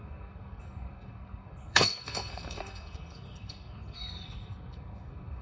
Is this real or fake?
fake